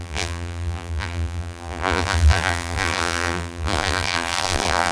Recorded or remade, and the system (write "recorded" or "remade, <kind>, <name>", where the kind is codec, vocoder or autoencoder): remade, vocoder, BigVGAN v2